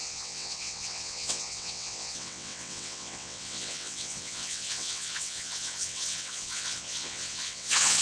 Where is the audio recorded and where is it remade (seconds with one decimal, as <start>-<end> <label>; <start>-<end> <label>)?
0.0-8.0 remade